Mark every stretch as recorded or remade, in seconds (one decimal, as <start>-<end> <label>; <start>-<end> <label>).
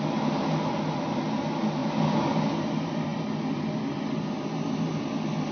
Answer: 0.0-5.5 recorded